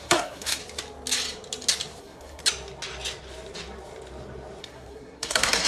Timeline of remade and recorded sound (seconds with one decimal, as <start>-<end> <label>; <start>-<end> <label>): 0.0-0.6 remade; 0.6-2.0 recorded; 2.0-2.4 remade; 2.4-4.6 recorded; 4.6-5.7 remade